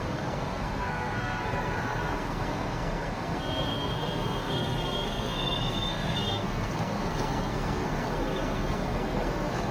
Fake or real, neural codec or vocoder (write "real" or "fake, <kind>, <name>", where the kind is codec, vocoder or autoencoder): fake, codec, SNAC